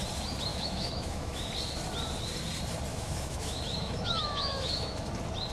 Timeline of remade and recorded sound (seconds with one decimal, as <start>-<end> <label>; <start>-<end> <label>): 0.0-0.5 recorded; 0.5-1.5 remade; 1.5-2.9 recorded; 2.9-5.1 remade; 5.1-5.5 recorded